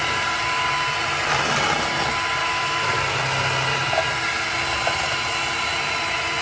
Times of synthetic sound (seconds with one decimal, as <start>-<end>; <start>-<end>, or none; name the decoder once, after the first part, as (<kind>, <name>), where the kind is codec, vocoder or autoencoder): 2.4-3.0 (autoencoder, DAC-VAE)

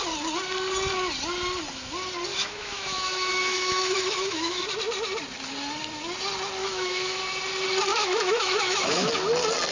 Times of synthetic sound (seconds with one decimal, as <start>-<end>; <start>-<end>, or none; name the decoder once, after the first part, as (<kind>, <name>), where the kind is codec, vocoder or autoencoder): 2.3-4.6 (autoencoder, DAC-VAE); 6.6-7.2; 7.9-9.1